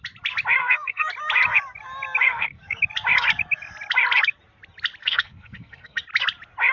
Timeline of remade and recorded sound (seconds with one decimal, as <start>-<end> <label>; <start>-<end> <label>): 0.0-0.6 recorded; 0.6-1.1 remade; 1.1-2.3 recorded; 2.3-2.8 remade; 2.8-5.0 recorded; 5.0-6.0 remade; 6.0-6.7 recorded

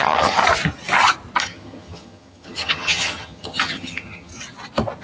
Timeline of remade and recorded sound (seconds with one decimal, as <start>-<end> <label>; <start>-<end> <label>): 0.0-0.4 remade; 0.4-1.4 recorded; 1.4-4.3 remade; 4.3-5.0 recorded

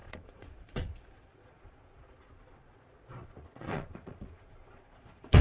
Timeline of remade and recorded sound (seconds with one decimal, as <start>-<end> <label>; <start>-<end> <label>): 0.0-5.4 remade